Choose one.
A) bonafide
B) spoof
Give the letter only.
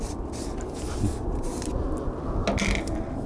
A